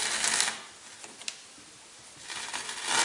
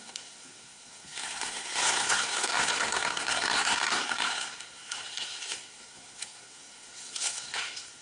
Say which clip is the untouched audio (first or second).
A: first